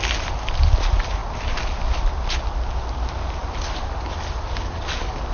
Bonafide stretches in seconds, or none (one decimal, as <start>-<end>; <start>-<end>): 0.0-5.3